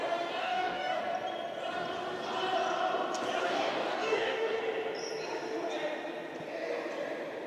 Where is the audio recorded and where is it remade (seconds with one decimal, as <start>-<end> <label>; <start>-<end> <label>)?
0.0-0.4 recorded; 0.4-1.0 remade; 1.0-3.4 recorded; 3.4-4.6 remade; 4.6-7.5 recorded